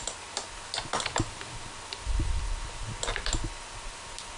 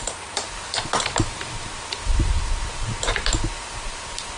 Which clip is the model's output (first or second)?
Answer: second